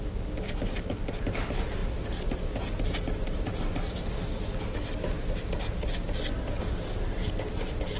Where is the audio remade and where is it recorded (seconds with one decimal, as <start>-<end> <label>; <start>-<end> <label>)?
0.0-8.0 recorded